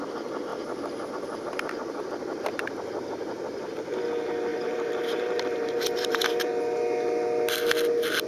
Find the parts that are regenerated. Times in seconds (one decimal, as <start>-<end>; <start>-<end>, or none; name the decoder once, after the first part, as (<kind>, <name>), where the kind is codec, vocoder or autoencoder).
0.5-1.1 (vocoder, BigVGAN v2); 4.5-6.5